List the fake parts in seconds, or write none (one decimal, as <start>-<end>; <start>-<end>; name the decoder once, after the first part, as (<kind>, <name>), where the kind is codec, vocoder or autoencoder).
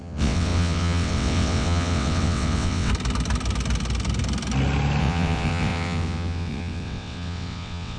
0.0-2.9 (vocoder, WaveNeXt); 5.0-8.0